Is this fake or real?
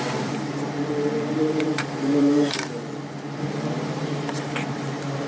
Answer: fake